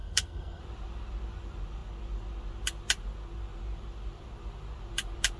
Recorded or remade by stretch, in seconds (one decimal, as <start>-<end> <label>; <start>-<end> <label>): 0.0-0.6 remade; 0.6-5.4 recorded